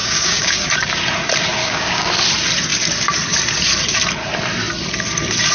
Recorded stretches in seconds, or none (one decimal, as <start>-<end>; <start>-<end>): 0.7-1.6; 2.1-5.5